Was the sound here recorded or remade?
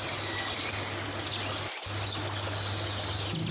recorded